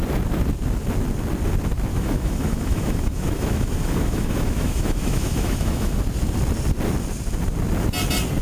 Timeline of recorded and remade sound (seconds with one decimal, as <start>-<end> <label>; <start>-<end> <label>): 0.0-1.9 recorded; 1.9-6.0 remade; 6.0-8.4 recorded